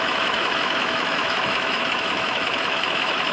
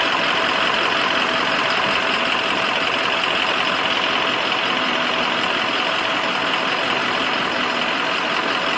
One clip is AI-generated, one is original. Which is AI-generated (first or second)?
first